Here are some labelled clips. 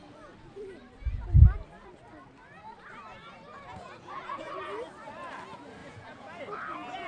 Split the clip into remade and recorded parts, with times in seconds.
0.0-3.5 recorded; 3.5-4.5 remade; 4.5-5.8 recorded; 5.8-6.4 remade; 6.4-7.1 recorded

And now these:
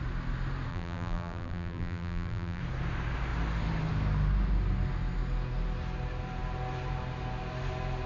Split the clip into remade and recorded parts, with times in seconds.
0.0-0.7 recorded; 0.7-2.6 remade; 2.6-8.1 recorded

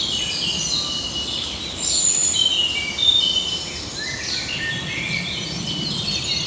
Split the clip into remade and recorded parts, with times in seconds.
0.0-6.5 recorded

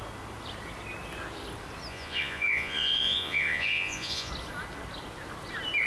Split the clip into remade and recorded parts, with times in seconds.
0.0-1.9 recorded; 1.9-4.3 remade; 4.3-5.9 recorded

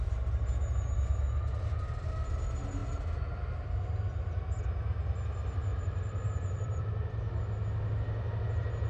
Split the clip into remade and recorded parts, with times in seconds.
0.0-5.7 recorded; 5.7-6.8 remade; 6.8-8.9 recorded

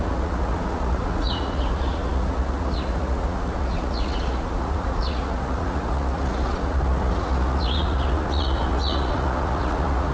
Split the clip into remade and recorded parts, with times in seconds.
0.0-10.1 remade